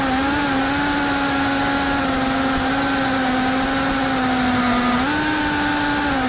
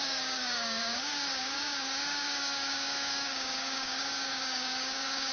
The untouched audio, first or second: first